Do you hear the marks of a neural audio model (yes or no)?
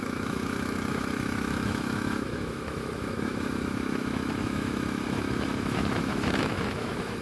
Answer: yes